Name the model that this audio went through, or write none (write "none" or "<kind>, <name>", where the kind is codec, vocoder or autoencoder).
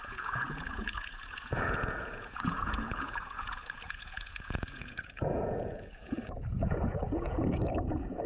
vocoder, Vocos